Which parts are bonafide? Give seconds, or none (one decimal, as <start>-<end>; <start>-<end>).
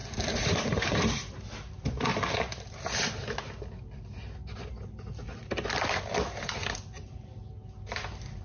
1.4-8.4